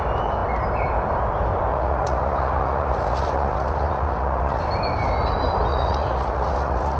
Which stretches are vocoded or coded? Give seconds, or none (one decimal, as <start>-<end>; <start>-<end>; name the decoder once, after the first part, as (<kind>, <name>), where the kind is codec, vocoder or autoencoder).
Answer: 1.7-4.6 (vocoder, Vocos); 5.7-7.0